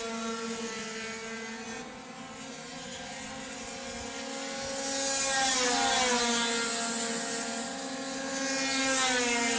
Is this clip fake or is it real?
real